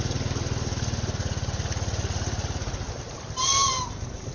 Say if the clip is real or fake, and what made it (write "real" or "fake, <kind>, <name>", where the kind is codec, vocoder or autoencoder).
real